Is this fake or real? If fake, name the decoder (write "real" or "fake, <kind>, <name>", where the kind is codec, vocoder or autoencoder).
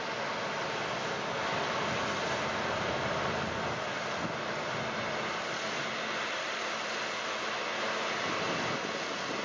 real